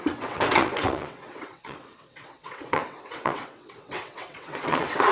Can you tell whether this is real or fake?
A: fake